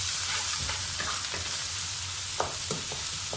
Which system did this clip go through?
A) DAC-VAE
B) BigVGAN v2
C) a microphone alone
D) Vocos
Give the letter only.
C